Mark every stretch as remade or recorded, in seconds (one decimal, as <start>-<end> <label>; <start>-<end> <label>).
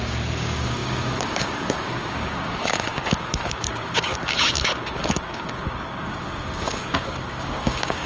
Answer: 0.0-8.1 remade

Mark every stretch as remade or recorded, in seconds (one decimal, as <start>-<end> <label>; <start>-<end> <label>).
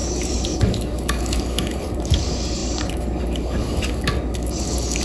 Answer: 0.0-5.0 remade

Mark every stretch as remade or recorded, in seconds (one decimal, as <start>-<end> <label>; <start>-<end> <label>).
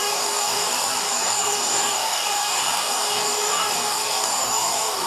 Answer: 0.0-5.1 remade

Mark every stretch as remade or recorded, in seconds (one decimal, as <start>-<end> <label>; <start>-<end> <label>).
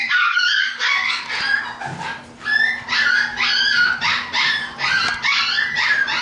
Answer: 0.0-1.3 remade; 1.3-6.2 recorded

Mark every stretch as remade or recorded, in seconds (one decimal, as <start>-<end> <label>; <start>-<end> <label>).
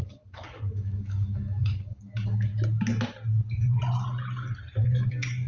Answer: 0.0-2.5 remade; 2.5-5.1 recorded; 5.1-5.5 remade